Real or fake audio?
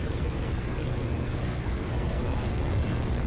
fake